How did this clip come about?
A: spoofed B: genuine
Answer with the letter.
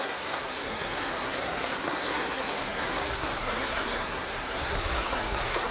A